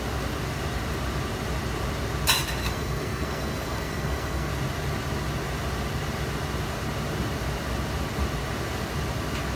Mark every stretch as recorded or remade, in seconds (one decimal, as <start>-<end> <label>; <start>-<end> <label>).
0.0-2.6 recorded; 2.6-4.5 remade; 4.5-9.6 recorded